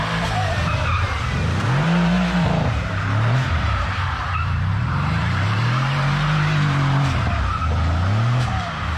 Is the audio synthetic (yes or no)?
yes